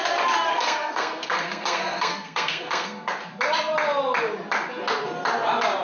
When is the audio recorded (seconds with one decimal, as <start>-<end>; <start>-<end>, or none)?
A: 0.0-0.5; 3.1-5.8